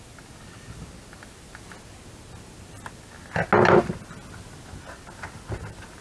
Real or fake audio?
real